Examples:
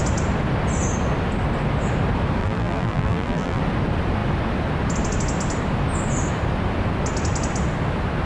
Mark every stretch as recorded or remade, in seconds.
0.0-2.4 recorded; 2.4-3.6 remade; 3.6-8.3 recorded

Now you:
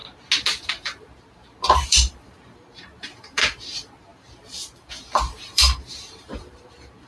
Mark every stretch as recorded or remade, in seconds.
0.0-0.7 recorded; 0.7-7.1 remade

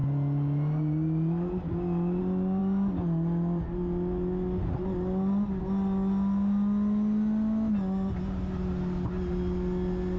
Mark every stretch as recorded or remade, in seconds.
0.0-10.2 recorded

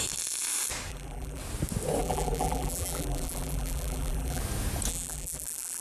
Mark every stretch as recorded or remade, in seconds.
0.0-0.9 recorded; 0.9-1.4 remade; 1.4-2.0 recorded; 2.0-4.4 remade; 4.4-4.9 recorded; 4.9-5.8 remade

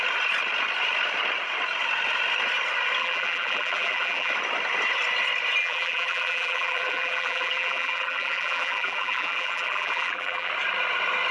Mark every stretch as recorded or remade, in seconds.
0.0-3.0 recorded; 3.0-4.3 remade; 4.3-5.6 recorded; 5.6-10.5 remade; 10.5-11.3 recorded

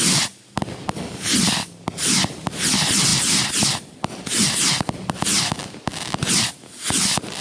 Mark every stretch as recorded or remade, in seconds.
0.0-2.0 recorded; 2.0-2.7 remade; 2.7-7.4 recorded

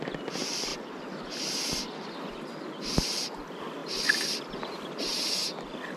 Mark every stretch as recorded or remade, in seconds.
0.0-3.8 recorded; 3.8-4.4 remade; 4.4-6.0 recorded